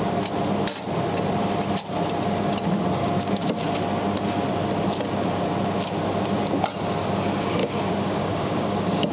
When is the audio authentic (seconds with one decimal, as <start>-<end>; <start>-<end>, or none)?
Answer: 0.0-3.0; 3.5-7.6